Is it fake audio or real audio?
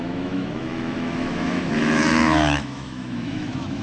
fake